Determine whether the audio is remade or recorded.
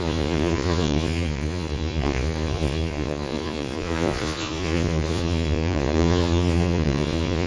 remade